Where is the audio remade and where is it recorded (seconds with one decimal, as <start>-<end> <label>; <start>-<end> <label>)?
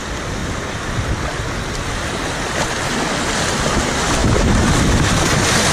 0.0-5.7 recorded